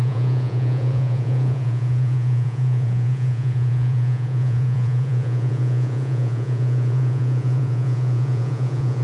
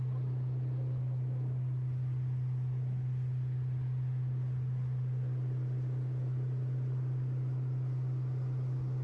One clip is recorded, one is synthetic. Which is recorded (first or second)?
second